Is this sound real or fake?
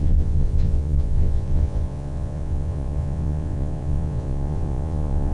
fake